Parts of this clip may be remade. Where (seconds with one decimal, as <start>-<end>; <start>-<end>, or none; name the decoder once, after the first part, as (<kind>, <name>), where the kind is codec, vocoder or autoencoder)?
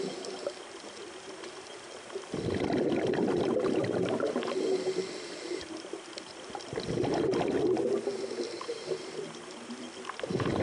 none